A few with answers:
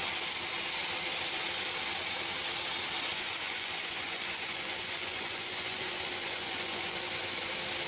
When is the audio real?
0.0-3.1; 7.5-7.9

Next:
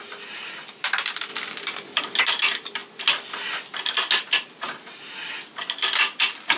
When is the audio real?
0.0-6.6

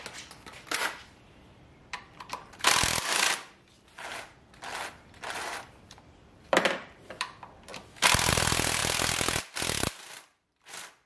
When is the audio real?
4.5-5.3; 7.7-8.3; 8.8-10.0

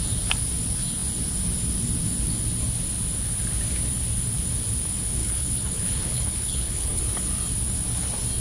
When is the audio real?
0.0-5.2; 7.0-8.4